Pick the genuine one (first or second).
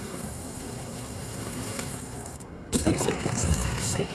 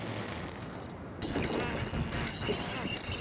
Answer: second